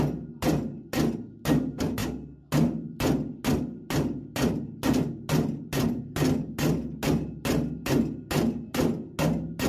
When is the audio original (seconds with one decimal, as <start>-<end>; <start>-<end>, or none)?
0.0-9.7